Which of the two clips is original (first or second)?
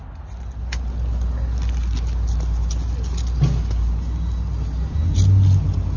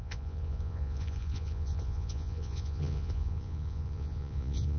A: first